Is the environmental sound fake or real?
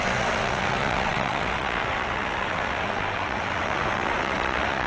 fake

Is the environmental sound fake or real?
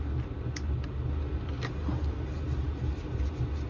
real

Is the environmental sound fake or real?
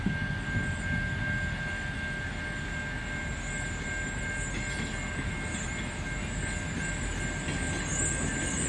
real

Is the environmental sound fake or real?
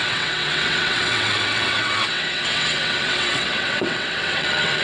fake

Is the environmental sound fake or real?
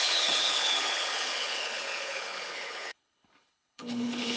fake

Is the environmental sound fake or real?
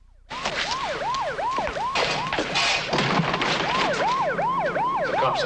real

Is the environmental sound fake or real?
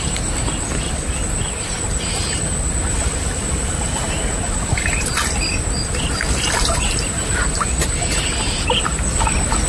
real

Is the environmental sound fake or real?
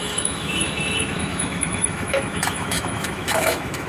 fake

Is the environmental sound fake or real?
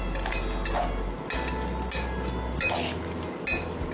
real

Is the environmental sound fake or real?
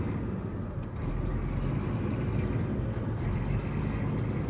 real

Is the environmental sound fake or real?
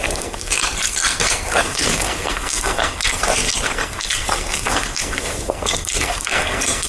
fake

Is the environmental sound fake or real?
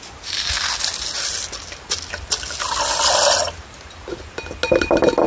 real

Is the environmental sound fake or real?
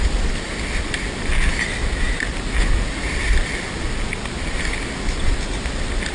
real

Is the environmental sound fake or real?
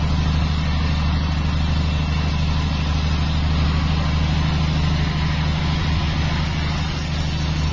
real